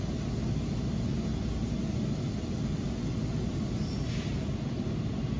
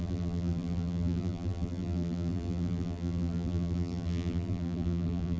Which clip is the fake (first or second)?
second